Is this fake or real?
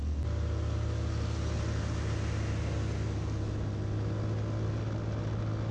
real